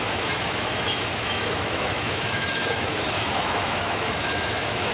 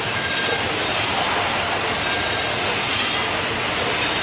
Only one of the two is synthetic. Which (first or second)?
first